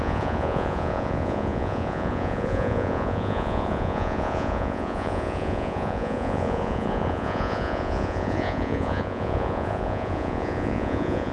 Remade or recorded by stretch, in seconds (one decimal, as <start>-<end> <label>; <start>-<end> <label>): 0.0-11.3 remade